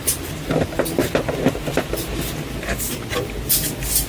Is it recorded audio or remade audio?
recorded